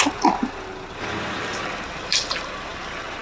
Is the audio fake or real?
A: real